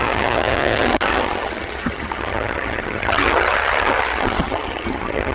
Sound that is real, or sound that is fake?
fake